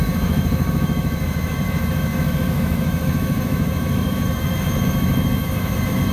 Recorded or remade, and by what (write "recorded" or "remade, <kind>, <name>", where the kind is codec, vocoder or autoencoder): remade, autoencoder, DAC-VAE